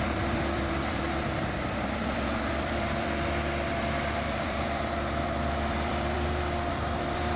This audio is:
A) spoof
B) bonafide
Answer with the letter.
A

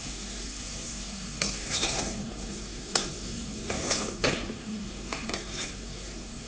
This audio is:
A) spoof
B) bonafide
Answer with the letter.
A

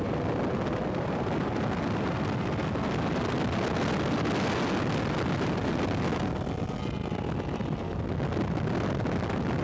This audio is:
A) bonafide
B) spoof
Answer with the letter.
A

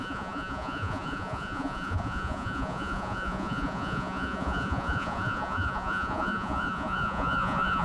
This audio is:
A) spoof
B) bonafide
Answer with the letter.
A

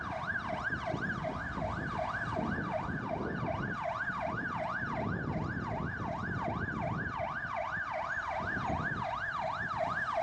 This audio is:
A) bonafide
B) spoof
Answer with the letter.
A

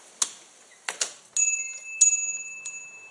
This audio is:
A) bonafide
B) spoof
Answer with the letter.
A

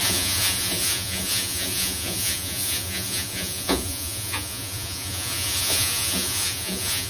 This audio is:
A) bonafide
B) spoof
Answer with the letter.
B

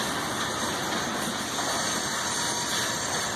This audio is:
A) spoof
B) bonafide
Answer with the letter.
B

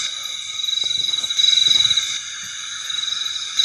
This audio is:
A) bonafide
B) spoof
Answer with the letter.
A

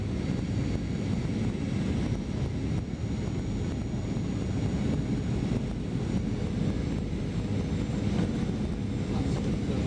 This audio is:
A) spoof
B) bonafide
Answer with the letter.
B